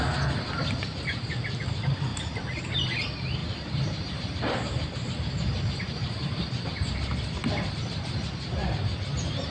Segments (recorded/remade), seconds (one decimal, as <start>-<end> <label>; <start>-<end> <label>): 0.0-2.1 recorded; 2.1-2.6 remade; 2.6-3.4 recorded; 3.4-7.7 remade; 7.7-9.5 recorded